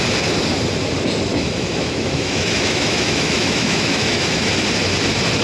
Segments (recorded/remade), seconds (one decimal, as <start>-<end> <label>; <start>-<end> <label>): 0.0-1.3 recorded; 1.3-4.5 remade; 4.5-5.4 recorded